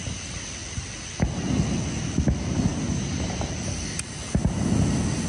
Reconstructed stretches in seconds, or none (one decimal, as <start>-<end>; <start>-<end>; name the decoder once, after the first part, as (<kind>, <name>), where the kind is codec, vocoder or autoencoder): 2.7-3.3 (vocoder, BigVGAN v2)